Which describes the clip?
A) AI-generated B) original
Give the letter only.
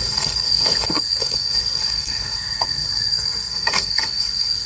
A